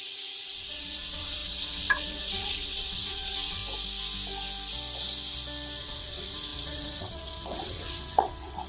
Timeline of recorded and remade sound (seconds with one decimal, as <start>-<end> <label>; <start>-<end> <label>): 0.0-3.6 remade; 3.6-5.8 recorded; 5.8-8.7 remade